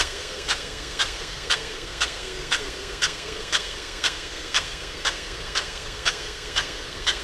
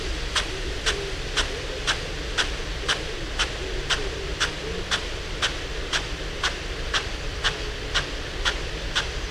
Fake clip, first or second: first